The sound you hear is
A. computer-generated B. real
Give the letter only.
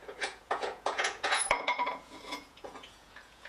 A